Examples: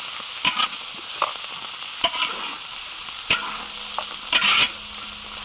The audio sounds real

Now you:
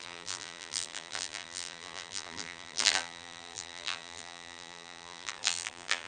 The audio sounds fake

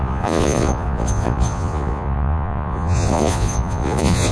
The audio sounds fake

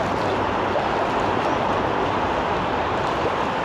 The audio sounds real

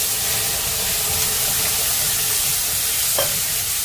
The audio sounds real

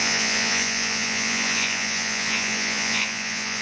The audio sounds fake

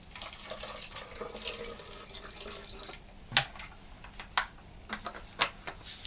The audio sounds real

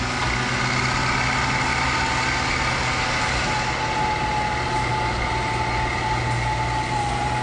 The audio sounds real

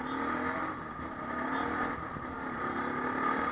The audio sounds real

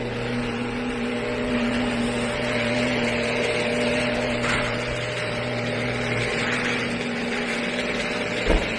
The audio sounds fake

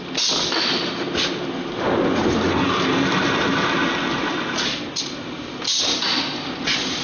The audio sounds real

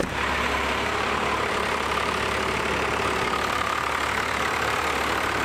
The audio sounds fake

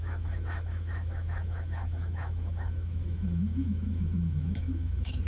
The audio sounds fake